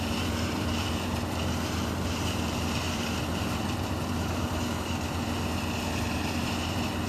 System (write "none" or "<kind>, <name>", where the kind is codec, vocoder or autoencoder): vocoder, BigVGAN v2